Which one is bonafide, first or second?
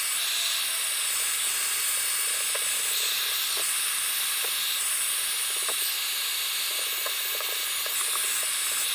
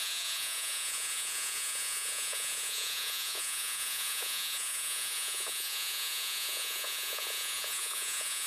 first